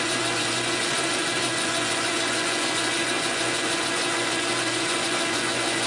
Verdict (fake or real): fake